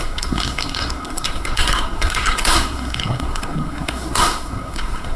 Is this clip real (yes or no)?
no